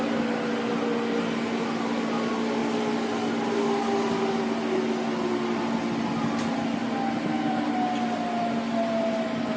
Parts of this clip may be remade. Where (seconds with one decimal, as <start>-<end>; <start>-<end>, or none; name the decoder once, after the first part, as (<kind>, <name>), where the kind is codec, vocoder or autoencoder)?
none